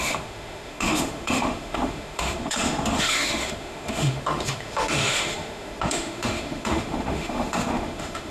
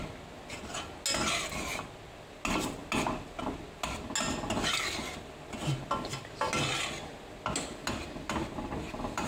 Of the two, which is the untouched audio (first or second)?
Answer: second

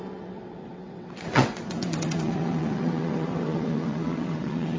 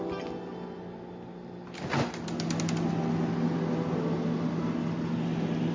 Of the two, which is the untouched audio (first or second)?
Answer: second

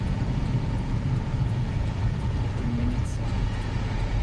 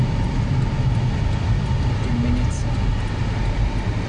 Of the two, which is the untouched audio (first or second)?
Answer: second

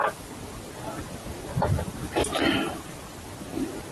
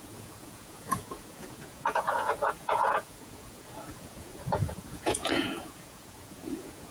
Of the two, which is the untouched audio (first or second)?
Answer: first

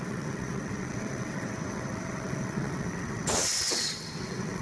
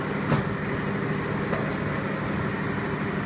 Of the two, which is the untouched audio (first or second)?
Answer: second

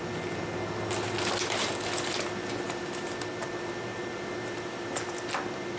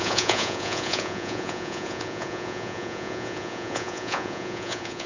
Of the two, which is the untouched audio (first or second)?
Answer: first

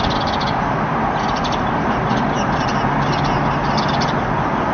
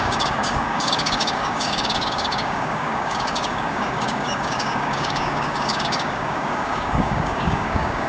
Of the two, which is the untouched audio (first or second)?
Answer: first